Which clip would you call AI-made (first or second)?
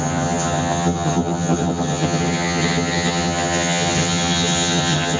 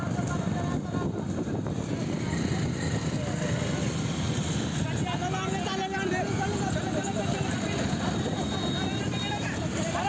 first